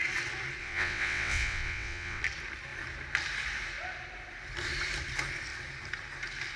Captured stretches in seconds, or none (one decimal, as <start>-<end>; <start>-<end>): 0.0-0.6; 2.2-6.6